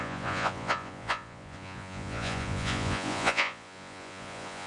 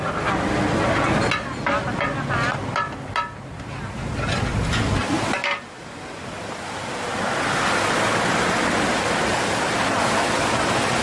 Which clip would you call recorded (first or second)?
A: second